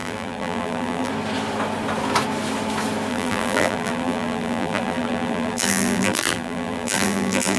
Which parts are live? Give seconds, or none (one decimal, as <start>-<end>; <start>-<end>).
1.1-3.1